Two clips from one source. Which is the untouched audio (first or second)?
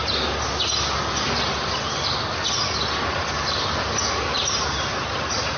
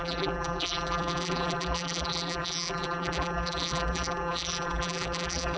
first